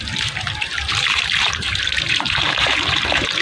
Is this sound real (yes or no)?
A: no